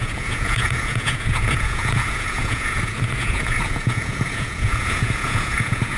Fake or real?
fake